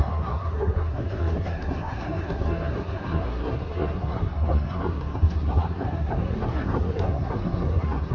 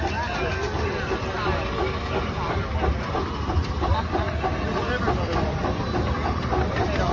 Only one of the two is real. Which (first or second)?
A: second